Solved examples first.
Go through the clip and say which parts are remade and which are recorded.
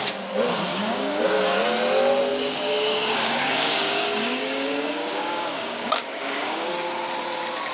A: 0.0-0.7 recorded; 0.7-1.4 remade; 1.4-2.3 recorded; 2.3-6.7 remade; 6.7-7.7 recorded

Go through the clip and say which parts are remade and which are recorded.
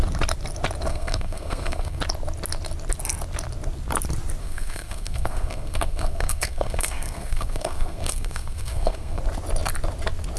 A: 0.0-0.9 recorded; 0.9-2.0 remade; 2.0-4.4 recorded; 4.4-9.2 remade; 9.2-10.4 recorded